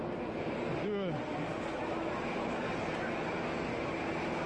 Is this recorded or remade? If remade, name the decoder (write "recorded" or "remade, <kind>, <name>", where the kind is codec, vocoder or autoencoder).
recorded